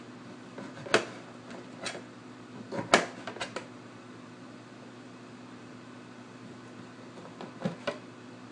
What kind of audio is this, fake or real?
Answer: real